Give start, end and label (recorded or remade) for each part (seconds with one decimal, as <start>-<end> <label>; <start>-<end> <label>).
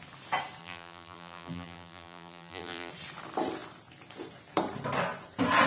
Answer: 0.0-0.6 recorded; 0.6-2.9 remade; 2.9-5.7 recorded